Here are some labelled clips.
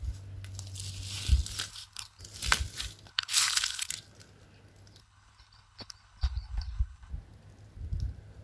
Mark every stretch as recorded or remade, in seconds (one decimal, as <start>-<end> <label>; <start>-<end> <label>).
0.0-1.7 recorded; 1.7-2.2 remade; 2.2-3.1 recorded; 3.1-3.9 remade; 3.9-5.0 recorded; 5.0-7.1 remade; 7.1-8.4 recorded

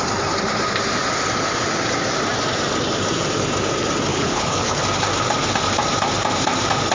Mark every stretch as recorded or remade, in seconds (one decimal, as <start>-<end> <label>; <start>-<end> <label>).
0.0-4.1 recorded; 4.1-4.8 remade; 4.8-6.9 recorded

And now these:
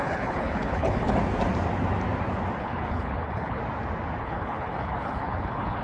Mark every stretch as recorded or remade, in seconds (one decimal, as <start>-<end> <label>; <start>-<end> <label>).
0.0-1.2 remade; 1.2-2.6 recorded; 2.6-3.6 remade; 3.6-4.2 recorded; 4.2-5.8 remade